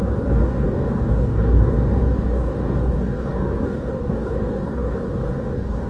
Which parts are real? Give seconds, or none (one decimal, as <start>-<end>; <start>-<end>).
none

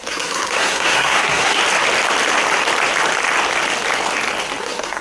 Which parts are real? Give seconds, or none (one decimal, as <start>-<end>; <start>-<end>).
1.6-4.6

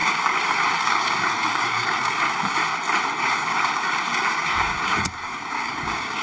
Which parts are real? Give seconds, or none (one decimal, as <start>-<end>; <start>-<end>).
2.6-3.2

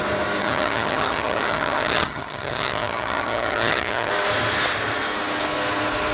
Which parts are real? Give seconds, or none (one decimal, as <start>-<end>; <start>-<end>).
0.0-0.4; 4.1-6.1

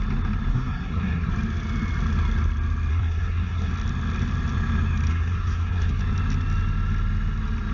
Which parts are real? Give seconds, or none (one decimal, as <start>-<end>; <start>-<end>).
0.0-0.5; 1.3-2.9; 3.7-5.1; 6.0-7.7

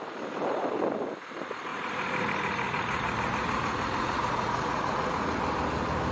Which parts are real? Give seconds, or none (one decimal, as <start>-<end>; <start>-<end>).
0.0-1.7; 5.4-6.1

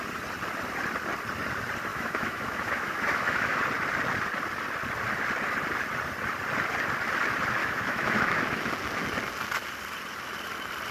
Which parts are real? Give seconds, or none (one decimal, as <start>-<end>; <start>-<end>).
0.0-1.9; 3.6-7.6; 8.7-10.9